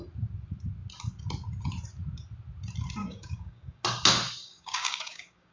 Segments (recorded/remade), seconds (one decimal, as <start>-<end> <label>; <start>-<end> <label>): 0.0-3.0 recorded; 3.0-3.8 remade; 3.8-4.4 recorded; 4.4-5.5 remade